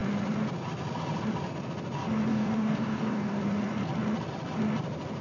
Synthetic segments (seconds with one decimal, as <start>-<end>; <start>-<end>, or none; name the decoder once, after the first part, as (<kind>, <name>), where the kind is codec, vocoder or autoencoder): 2.3-3.4 (codec, DAC)